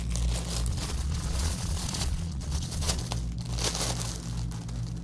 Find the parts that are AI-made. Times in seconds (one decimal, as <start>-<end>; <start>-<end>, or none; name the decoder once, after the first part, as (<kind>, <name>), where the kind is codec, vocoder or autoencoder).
0.7-3.0 (vocoder, Vocos)